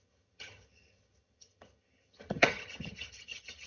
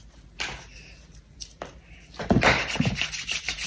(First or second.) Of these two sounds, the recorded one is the second